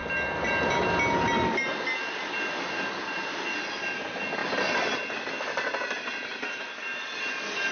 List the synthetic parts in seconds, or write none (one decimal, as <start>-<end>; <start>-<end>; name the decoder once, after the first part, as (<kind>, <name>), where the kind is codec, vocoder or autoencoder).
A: none